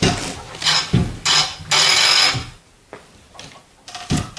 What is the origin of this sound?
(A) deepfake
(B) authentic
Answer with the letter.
B